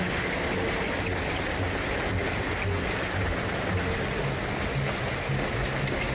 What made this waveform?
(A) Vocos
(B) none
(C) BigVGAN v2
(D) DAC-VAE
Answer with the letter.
B